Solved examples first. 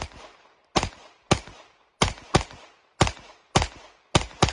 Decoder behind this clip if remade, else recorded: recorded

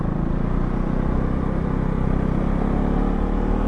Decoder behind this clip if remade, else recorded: recorded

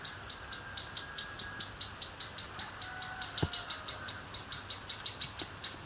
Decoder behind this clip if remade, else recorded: recorded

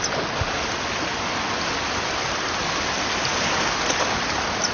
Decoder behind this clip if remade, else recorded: recorded